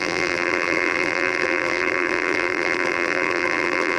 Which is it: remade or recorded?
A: remade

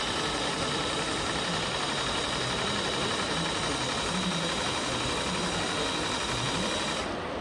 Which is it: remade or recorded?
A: recorded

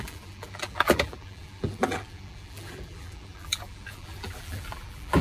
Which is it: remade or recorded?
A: remade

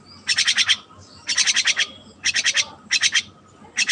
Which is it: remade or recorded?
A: recorded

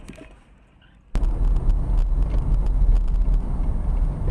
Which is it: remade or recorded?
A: recorded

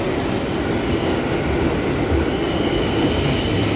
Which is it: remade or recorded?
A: recorded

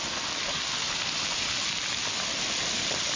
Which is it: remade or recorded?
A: recorded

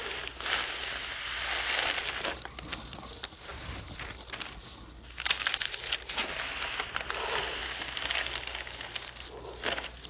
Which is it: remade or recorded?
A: recorded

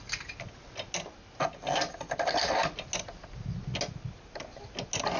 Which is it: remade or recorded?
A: recorded